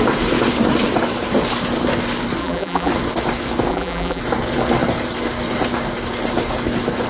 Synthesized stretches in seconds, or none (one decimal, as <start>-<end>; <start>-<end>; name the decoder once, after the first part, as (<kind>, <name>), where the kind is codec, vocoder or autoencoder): 2.4-2.9 (vocoder, BigVGAN v2); 3.7-4.2